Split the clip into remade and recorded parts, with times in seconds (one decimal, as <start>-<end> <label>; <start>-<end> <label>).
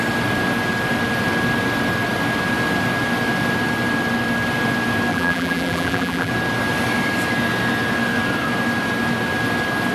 0.0-5.1 recorded; 5.1-6.3 remade; 6.3-9.9 recorded